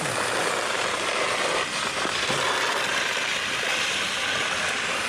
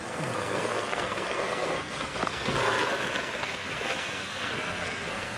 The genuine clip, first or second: first